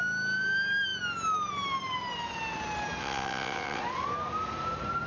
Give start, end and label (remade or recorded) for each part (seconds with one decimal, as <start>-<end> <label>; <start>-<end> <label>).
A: 0.0-3.0 recorded; 3.0-3.8 remade; 3.8-5.1 recorded